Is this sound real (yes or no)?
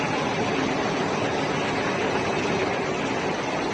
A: yes